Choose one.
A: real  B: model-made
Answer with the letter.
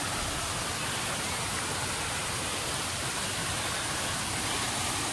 A